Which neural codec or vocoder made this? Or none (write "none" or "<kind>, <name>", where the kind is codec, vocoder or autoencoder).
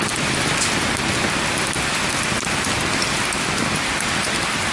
none